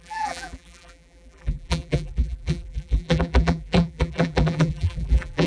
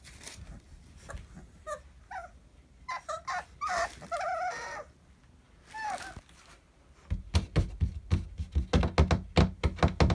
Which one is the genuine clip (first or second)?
second